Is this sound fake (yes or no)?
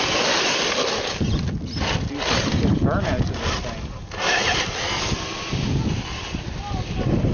no